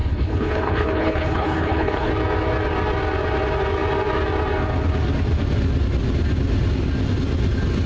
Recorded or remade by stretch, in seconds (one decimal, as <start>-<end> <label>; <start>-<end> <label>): 0.0-2.1 remade; 2.1-7.9 recorded